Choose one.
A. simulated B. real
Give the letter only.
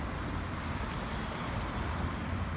B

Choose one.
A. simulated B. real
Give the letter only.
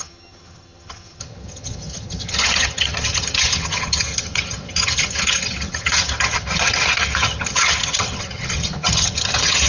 A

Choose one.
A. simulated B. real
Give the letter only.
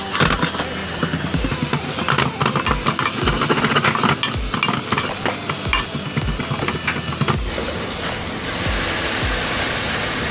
B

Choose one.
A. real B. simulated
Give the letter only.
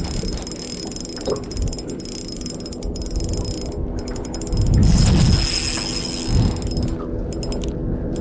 A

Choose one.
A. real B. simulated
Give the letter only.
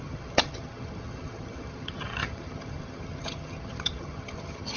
B